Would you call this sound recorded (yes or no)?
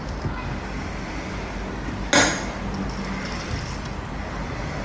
yes